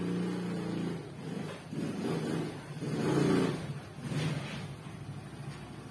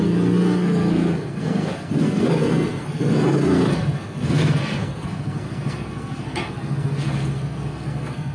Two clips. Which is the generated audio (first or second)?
second